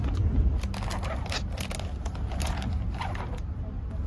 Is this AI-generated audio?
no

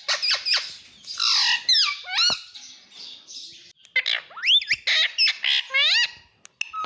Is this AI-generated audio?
no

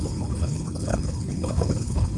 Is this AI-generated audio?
yes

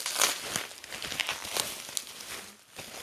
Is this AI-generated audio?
no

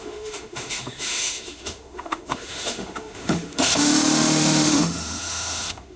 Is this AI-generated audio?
yes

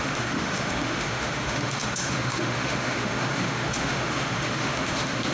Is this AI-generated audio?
yes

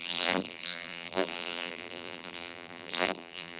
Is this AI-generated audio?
yes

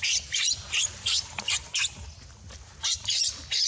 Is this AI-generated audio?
no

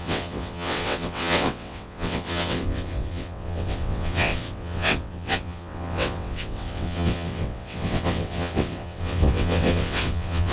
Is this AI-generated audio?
yes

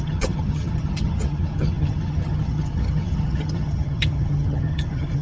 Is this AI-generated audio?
yes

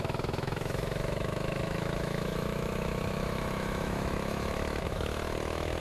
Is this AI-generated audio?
yes